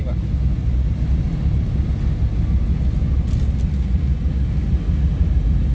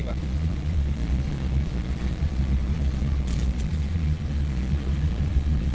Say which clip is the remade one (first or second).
second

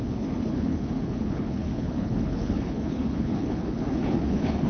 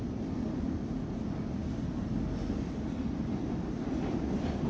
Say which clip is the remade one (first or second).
first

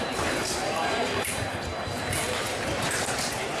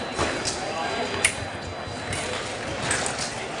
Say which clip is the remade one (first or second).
first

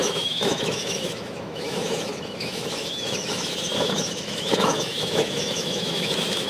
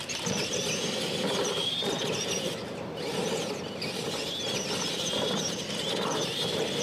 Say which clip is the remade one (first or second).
first